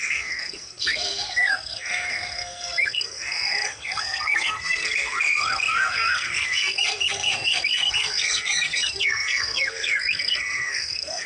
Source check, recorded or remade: remade